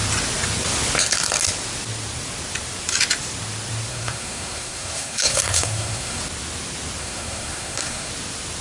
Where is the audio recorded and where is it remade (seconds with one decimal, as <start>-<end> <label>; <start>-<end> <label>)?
0.0-3.9 recorded; 3.9-6.2 remade; 6.2-7.0 recorded; 7.0-8.1 remade; 8.1-8.6 recorded